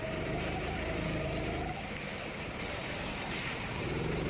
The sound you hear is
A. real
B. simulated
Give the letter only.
B